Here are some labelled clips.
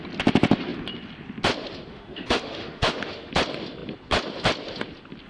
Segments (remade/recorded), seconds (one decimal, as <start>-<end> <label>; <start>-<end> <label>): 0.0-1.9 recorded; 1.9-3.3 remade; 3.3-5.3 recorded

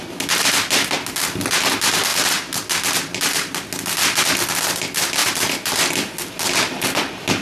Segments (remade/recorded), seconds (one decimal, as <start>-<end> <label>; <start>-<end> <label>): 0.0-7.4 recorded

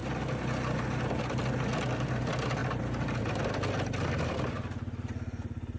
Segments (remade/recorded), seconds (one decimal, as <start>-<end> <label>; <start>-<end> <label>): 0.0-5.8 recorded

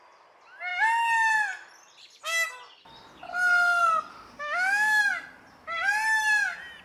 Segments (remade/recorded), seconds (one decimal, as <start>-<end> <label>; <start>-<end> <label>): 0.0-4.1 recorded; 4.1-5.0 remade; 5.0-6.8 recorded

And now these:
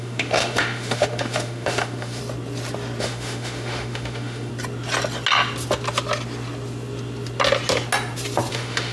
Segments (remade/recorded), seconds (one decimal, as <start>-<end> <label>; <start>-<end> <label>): 0.0-2.2 remade; 2.2-3.0 recorded; 3.0-4.5 remade; 4.5-8.5 recorded; 8.5-8.9 remade